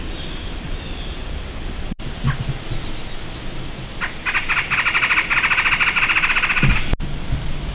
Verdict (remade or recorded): recorded